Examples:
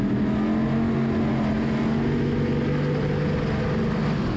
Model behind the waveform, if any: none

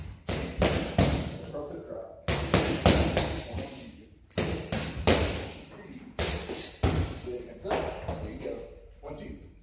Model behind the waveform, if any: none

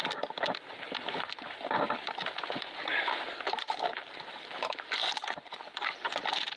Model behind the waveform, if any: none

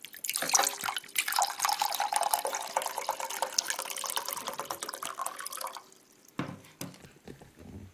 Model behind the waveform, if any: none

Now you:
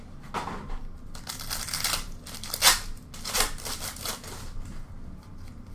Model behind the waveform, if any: none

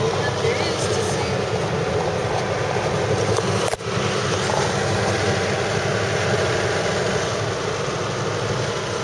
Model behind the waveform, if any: none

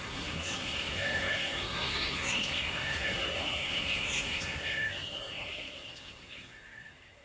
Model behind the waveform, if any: codec, SNAC